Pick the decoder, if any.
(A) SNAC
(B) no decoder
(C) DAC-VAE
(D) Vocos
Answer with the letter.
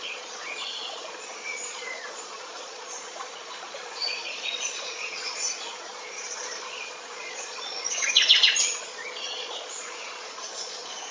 D